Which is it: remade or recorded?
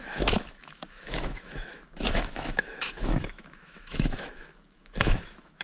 remade